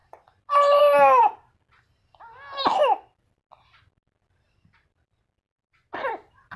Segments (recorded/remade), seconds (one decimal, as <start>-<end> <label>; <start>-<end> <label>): 0.0-0.8 remade; 0.8-6.6 recorded